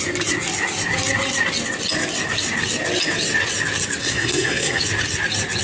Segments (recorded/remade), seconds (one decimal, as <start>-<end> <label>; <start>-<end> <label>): 0.0-4.0 recorded; 4.0-4.8 remade; 4.8-5.6 recorded